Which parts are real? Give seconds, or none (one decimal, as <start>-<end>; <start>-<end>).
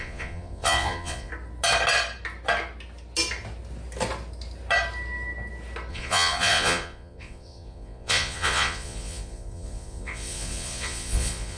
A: 1.3-5.9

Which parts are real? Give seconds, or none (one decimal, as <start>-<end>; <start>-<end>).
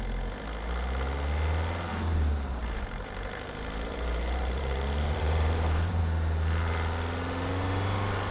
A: 0.0-1.9; 6.0-8.3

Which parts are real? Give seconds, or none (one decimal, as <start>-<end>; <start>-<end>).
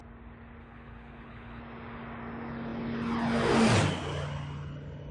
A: 0.0-0.6; 1.6-5.1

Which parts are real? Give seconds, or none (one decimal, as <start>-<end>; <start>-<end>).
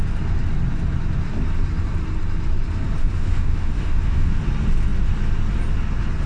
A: 0.0-3.0; 4.4-6.3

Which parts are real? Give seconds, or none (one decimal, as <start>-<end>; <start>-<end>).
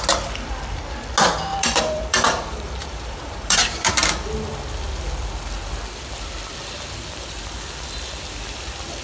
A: 0.0-1.5; 3.9-9.0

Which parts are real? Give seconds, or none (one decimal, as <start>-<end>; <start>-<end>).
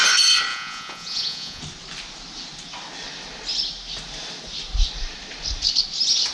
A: 0.0-0.5; 1.6-6.3